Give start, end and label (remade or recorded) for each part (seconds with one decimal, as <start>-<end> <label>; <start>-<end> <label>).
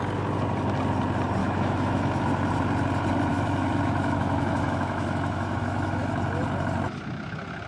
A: 0.0-1.4 recorded; 1.4-2.2 remade; 2.2-3.3 recorded; 3.3-6.1 remade; 6.1-7.7 recorded